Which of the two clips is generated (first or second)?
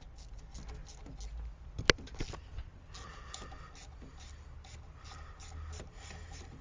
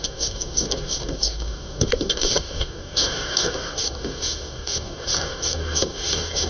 second